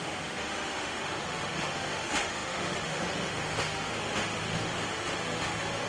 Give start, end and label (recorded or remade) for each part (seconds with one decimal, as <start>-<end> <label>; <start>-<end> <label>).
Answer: 0.0-5.9 remade